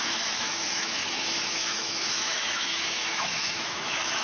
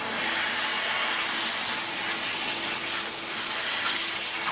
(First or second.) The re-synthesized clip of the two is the first